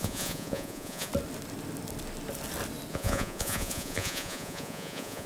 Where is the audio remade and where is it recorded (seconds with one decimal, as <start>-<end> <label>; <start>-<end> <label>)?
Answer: 0.0-1.1 remade; 1.1-2.9 recorded; 2.9-5.3 remade